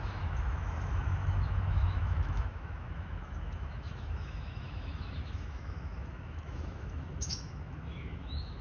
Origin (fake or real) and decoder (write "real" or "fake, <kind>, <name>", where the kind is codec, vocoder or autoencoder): fake, autoencoder, DAC-VAE